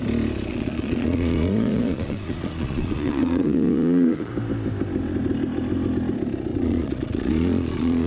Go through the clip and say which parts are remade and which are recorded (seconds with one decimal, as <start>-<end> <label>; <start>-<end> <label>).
0.0-0.5 recorded; 0.5-4.3 remade; 4.3-6.5 recorded; 6.5-8.1 remade